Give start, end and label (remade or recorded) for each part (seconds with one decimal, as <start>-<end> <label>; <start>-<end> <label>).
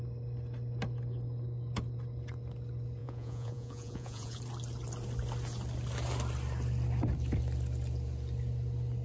0.0-3.0 recorded; 3.0-4.4 remade; 4.4-9.0 recorded